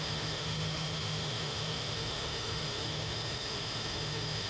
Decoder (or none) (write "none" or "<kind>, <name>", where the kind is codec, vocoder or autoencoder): autoencoder, DAC-VAE